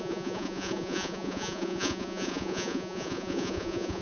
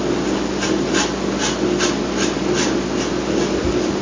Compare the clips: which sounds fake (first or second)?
first